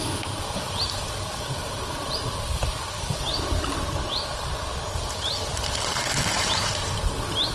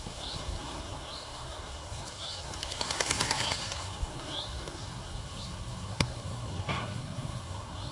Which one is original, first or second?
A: first